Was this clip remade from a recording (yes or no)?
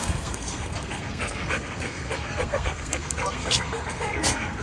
yes